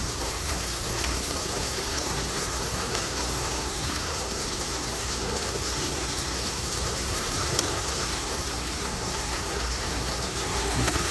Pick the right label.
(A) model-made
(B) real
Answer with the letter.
A